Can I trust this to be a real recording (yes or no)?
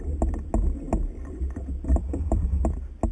yes